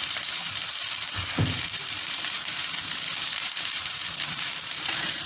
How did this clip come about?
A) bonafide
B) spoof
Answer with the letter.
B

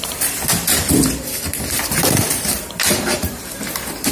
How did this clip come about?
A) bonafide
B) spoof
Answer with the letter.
B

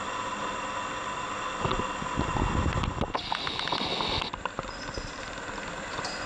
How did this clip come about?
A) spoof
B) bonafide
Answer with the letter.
B